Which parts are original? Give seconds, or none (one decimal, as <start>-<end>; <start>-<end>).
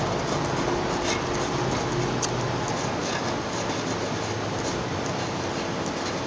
0.0-6.3